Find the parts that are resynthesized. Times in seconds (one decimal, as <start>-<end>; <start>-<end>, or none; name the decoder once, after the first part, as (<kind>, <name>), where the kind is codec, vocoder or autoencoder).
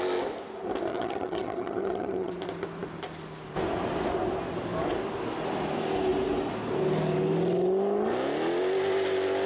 0.9-2.3 (vocoder, HiFi-GAN)